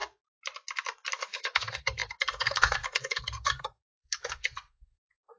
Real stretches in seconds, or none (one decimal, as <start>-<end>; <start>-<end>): 0.0-1.2